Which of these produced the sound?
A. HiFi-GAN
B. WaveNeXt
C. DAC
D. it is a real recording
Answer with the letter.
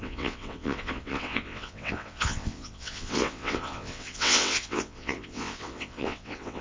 B